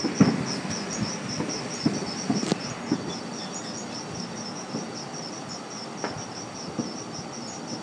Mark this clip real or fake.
real